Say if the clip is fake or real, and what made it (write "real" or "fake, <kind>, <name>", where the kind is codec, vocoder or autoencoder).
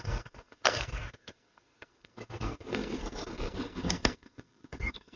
fake, codec, SNAC